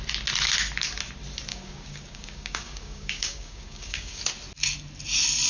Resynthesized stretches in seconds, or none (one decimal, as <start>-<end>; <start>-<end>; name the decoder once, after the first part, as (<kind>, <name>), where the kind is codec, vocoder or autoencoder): 1.5-4.2 (codec, DAC)